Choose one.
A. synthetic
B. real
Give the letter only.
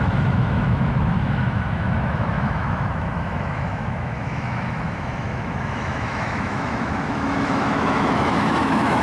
A